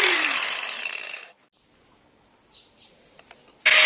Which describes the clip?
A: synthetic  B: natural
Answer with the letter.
B